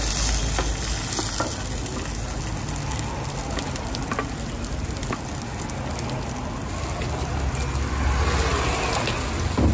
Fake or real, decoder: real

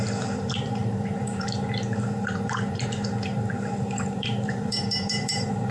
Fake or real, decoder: fake, vocoder, BigVGAN v2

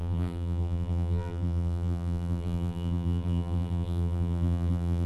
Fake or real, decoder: fake, vocoder, BigVGAN v2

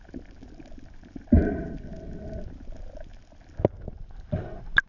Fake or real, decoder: real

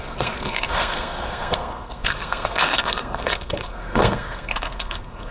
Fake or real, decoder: fake, codec, SNAC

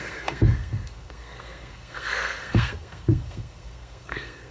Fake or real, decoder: fake, codec, SNAC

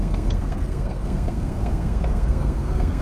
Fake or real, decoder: fake, codec, SNAC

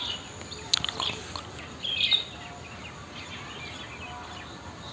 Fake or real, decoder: real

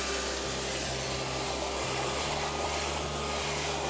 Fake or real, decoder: real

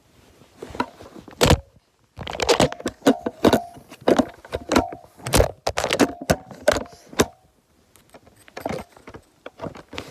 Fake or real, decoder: real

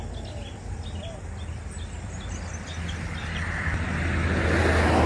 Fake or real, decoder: real